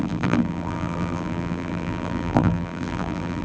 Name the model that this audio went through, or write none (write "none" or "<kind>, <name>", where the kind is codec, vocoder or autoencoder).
vocoder, BigVGAN v2